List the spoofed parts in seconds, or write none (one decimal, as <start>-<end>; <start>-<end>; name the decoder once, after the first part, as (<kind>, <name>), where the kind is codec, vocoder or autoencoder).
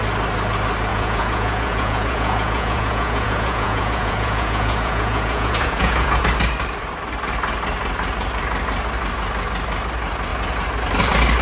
0.9-6.2 (vocoder, Vocos)